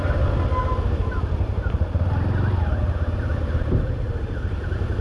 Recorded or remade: recorded